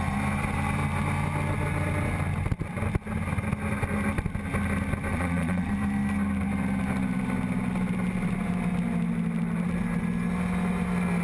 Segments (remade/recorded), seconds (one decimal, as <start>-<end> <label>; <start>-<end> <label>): 0.0-5.1 recorded; 5.1-5.7 remade; 5.7-11.2 recorded